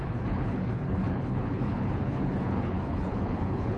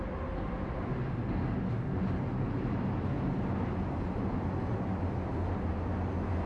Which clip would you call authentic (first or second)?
second